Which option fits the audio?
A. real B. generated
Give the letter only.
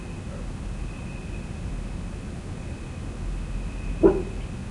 A